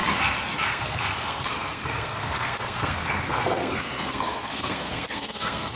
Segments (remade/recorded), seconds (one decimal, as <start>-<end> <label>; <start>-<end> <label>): 0.0-0.6 recorded; 0.6-5.8 remade

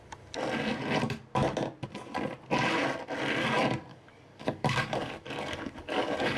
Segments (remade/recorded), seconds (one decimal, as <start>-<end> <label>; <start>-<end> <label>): 0.0-3.9 recorded; 3.9-6.4 remade

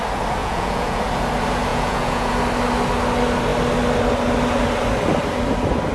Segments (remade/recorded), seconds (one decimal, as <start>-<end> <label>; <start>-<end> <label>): 0.0-0.4 recorded; 0.4-1.0 remade; 1.0-1.7 recorded; 1.7-2.3 remade; 2.3-5.9 recorded

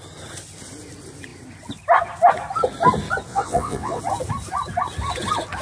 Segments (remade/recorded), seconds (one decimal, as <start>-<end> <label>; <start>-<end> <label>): 0.0-3.3 recorded; 3.3-4.0 remade; 4.0-5.6 recorded

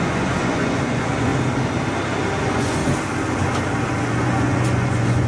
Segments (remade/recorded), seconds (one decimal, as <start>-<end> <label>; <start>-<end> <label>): 0.0-1.3 remade; 1.3-2.4 recorded; 2.4-2.8 remade; 2.8-4.0 recorded; 4.0-5.3 remade

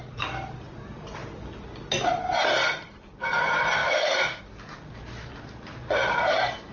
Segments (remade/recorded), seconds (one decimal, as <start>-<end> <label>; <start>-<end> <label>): 0.0-3.8 recorded; 3.8-4.4 remade; 4.4-6.7 recorded